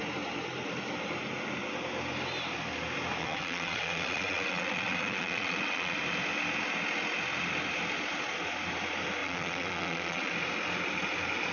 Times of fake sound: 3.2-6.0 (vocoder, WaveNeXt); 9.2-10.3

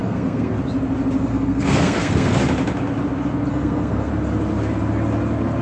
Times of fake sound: 0.0-0.5 (codec, SNAC); 1.3-2.4; 3.5-4.1

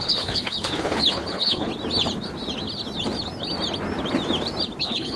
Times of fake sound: 0.0-1.7 (codec, HILCodec); 4.8-5.2

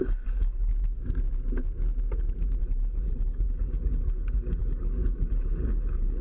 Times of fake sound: 0.0-0.7 (codec, HILCodec); 2.6-6.2

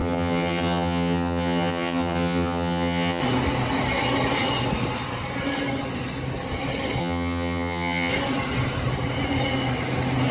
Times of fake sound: 0.0-3.2 (vocoder, HiFi-GAN); 7.0-8.1

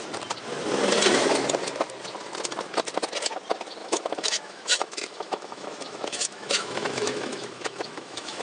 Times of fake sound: 3.8-8.4 (autoencoder, DAC-VAE)

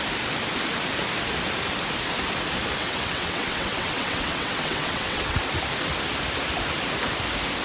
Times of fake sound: 2.8-5.4 (vocoder, WaveNeXt)